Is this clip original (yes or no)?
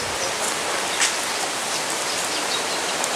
yes